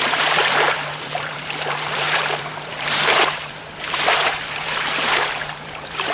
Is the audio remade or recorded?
remade